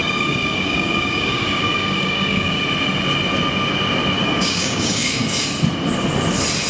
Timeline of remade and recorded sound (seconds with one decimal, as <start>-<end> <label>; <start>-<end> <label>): 0.0-2.6 remade; 2.6-4.2 recorded; 4.2-5.5 remade; 5.5-6.7 recorded